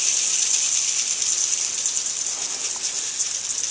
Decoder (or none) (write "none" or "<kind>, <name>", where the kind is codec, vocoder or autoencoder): none